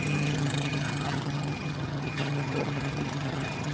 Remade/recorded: remade